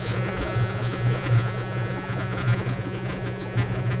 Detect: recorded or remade remade